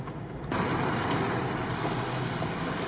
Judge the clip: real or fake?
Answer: real